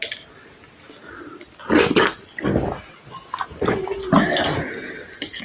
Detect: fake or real real